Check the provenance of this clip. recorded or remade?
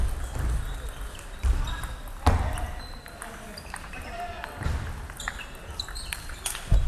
recorded